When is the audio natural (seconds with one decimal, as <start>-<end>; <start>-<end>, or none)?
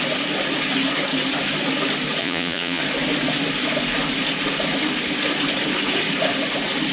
0.0-2.2; 2.8-6.9